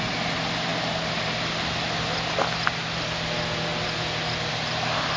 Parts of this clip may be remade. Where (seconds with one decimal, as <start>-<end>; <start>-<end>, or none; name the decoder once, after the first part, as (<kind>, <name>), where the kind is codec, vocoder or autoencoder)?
none